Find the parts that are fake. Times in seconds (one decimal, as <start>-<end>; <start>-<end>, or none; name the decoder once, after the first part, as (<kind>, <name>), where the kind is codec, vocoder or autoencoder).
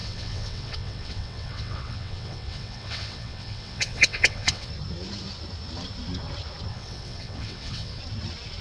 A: 0.0-4.7 (vocoder, WaveNeXt); 6.7-8.0